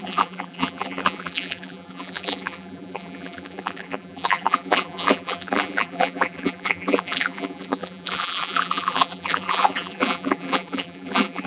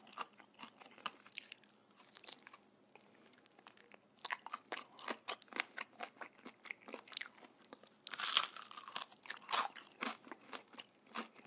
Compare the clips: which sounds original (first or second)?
second